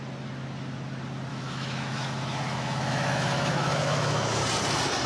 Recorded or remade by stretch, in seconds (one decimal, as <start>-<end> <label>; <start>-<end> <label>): 0.0-1.3 recorded; 1.3-4.4 remade; 4.4-5.1 recorded